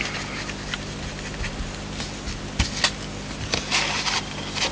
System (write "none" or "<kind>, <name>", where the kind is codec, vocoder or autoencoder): none